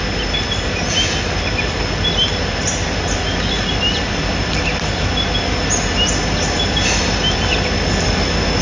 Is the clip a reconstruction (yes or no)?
no